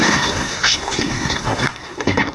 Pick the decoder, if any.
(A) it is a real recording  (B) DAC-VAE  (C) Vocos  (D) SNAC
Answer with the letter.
D